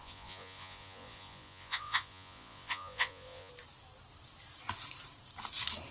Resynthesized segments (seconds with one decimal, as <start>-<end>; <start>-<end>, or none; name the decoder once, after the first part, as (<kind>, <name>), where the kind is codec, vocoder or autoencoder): 0.0-3.5 (vocoder, Vocos)